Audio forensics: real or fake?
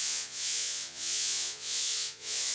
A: fake